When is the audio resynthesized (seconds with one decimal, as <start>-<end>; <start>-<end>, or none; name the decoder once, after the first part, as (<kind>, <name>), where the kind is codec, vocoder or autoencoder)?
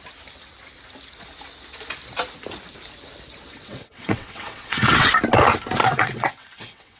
3.5-5.2 (vocoder, WaveNeXt); 5.8-7.0